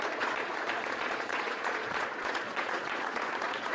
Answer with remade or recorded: remade